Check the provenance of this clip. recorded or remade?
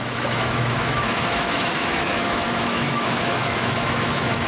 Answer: remade